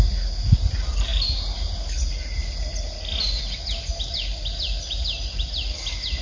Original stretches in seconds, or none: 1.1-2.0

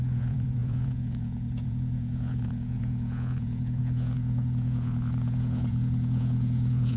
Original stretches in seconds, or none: none